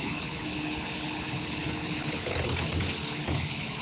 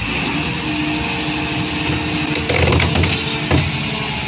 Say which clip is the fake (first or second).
first